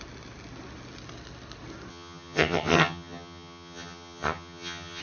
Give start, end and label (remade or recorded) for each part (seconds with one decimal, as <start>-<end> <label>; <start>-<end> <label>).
0.0-1.9 recorded; 1.9-5.0 remade